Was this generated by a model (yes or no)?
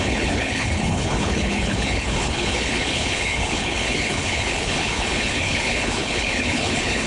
yes